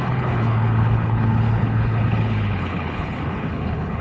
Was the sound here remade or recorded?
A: remade